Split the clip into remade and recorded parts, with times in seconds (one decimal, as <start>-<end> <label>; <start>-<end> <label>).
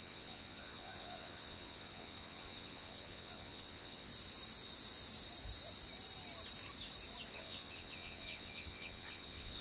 0.0-4.1 remade; 4.1-7.3 recorded; 7.3-9.6 remade